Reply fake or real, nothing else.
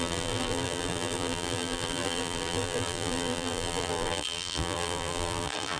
fake